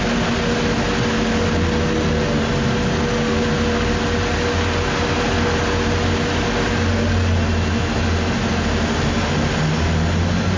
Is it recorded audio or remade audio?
recorded